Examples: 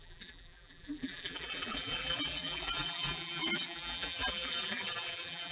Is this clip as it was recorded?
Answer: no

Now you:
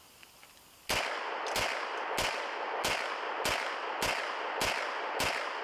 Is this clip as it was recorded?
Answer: yes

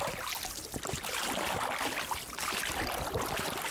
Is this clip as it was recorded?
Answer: yes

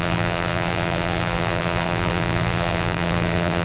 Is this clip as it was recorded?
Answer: no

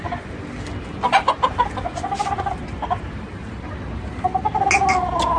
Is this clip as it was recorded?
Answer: yes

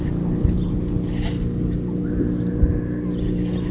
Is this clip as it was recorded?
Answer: yes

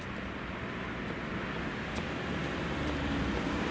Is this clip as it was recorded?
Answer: yes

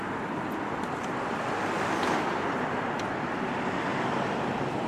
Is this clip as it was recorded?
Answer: yes